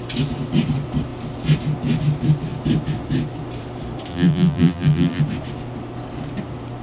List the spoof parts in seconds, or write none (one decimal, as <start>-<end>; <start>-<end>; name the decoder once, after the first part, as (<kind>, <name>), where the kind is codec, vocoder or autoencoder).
4.1-5.2 (vocoder, BigVGAN v2)